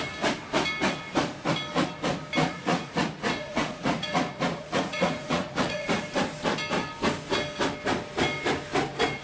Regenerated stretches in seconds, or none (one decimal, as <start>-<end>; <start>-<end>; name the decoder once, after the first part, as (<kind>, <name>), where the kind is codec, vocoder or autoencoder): 2.4-5.9 (vocoder, Vocos)